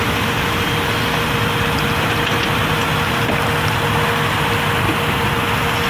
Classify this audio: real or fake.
real